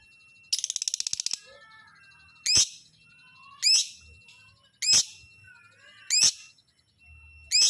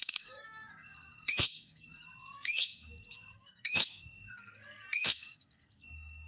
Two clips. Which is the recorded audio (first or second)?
first